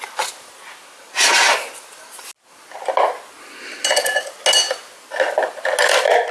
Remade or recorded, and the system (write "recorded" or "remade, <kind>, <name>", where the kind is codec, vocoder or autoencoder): recorded